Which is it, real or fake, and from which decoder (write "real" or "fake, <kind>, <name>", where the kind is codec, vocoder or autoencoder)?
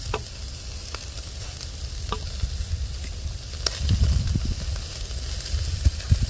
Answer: real